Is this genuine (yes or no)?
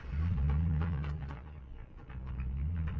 no